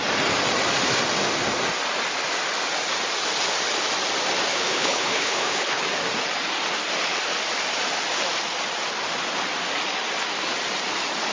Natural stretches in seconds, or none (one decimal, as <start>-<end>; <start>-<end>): 0.0-4.5; 5.8-11.3